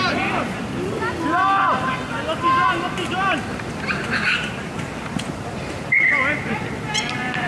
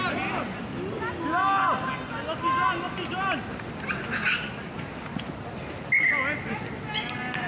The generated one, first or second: first